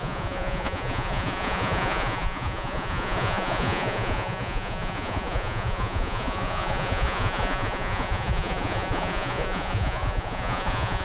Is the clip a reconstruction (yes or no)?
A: yes